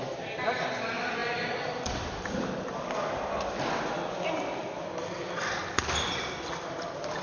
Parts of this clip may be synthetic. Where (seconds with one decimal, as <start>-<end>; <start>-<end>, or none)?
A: none